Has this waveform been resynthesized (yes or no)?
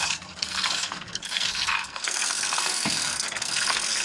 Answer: yes